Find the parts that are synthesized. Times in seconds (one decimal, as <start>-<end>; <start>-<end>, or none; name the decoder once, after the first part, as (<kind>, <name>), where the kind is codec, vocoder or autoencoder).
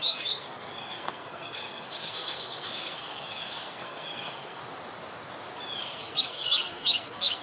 0.0-4.6 (codec, SNAC); 5.8-7.4